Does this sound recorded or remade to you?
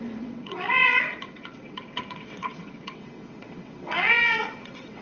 remade